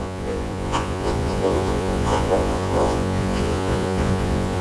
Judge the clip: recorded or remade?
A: remade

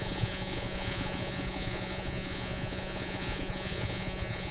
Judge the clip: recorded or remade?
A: remade